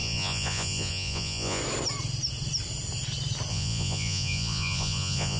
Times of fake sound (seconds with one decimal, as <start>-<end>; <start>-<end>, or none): 0.0-1.6; 3.5-5.4